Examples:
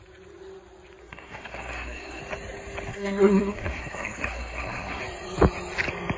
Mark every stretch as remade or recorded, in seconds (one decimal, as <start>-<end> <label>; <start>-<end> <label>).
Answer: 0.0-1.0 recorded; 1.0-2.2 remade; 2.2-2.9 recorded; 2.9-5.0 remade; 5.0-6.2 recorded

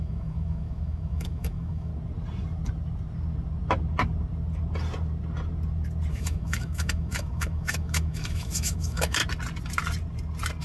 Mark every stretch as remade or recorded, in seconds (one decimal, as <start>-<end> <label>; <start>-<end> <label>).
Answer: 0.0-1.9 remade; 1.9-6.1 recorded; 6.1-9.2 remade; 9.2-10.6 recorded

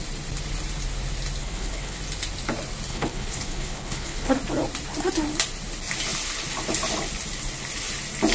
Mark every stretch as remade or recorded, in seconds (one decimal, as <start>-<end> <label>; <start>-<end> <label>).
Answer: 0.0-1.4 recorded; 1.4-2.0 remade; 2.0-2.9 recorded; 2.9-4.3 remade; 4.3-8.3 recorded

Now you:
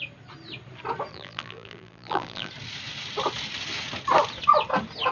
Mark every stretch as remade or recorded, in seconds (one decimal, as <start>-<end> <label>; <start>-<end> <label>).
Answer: 0.0-1.1 recorded; 1.1-2.5 remade; 2.5-5.1 recorded

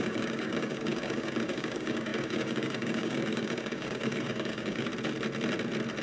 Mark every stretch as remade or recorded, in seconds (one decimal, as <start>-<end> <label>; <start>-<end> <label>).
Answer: 0.0-4.9 remade; 4.9-6.0 recorded